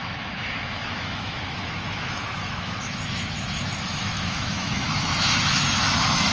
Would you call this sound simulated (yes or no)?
yes